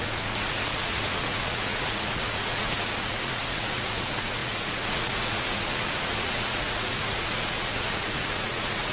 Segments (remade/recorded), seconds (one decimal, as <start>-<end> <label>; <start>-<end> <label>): 0.0-8.9 remade